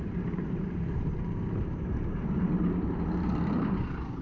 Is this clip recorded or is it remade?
remade